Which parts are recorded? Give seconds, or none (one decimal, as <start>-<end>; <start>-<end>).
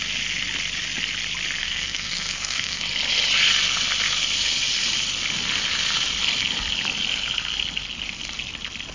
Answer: 0.0-1.6; 2.8-8.9